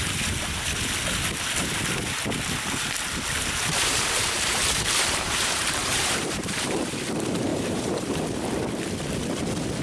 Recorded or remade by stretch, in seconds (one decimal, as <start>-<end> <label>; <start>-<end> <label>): 0.0-3.4 recorded; 3.4-7.0 remade; 7.0-7.5 recorded; 7.5-8.2 remade; 8.2-9.8 recorded